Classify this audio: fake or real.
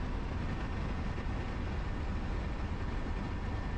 real